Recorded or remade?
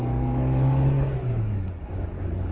remade